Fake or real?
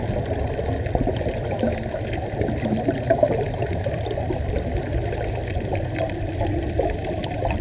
real